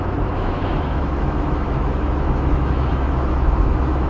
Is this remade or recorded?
remade